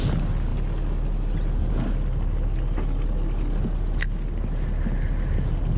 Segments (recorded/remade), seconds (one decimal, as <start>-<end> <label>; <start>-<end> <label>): 0.0-5.8 recorded